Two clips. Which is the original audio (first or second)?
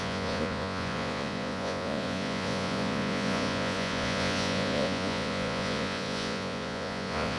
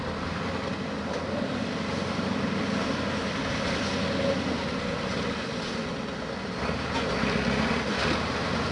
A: second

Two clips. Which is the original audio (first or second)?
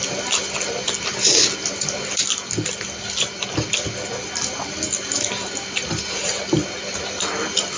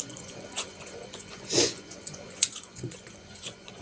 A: first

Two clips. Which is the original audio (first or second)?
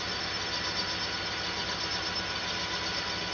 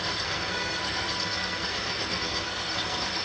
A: first